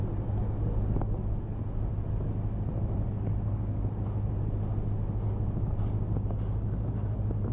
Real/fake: real